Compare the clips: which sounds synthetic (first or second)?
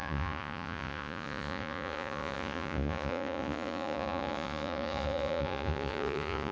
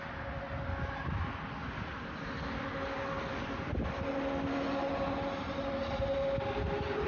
first